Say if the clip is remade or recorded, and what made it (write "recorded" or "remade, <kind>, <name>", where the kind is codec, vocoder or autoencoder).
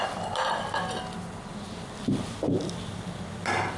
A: remade, vocoder, BigVGAN v2